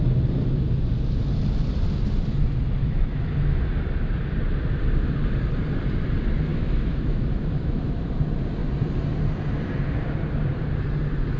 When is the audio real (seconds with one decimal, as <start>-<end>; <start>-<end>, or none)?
0.0-2.8; 3.6-6.5; 8.0-11.4